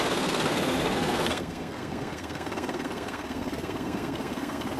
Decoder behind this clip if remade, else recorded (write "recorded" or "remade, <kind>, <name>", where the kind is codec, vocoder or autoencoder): remade, codec, SNAC